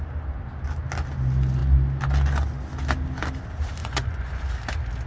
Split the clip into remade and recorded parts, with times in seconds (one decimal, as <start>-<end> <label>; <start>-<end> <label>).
0.0-3.8 recorded; 3.8-4.5 remade; 4.5-5.1 recorded